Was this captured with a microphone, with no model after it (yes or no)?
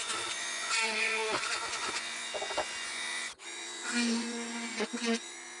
no